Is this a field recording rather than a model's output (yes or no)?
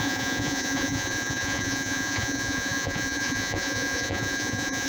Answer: no